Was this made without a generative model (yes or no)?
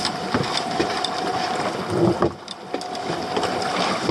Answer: yes